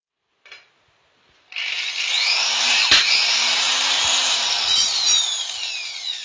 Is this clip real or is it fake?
real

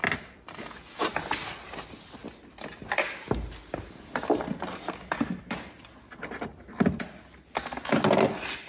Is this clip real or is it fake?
real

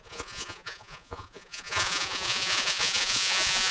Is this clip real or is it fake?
fake